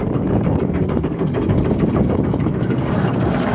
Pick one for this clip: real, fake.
fake